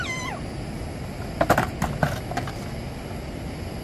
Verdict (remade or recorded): recorded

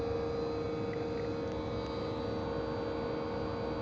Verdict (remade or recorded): recorded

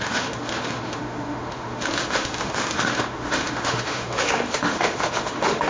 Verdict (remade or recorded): remade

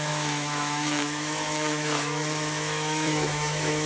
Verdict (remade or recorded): remade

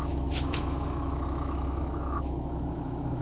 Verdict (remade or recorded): remade